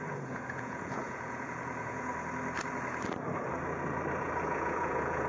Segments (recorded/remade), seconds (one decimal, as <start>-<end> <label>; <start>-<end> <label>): 0.0-2.1 remade; 2.1-4.2 recorded; 4.2-5.3 remade